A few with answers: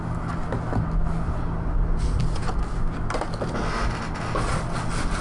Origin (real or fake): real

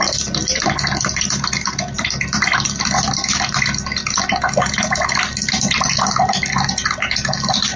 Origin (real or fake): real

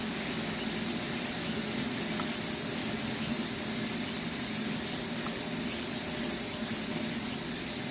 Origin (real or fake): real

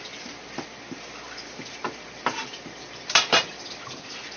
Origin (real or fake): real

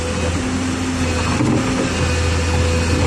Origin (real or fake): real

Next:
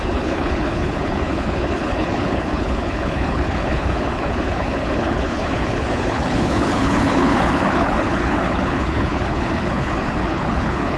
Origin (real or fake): fake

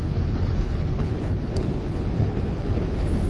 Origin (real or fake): fake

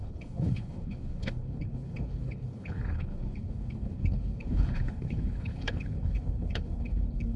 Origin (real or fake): fake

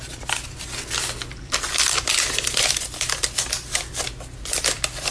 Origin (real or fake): real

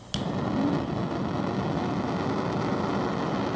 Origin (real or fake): real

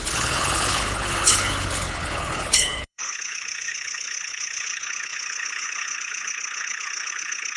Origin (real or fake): fake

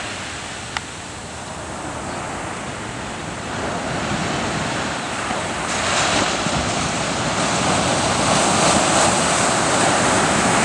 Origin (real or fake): real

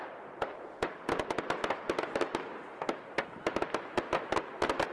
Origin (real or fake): real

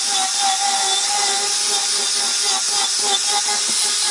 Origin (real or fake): real